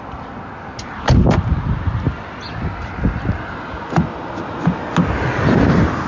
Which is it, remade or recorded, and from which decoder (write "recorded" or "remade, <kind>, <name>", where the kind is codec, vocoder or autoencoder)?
recorded